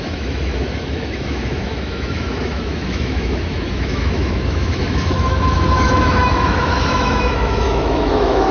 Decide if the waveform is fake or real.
fake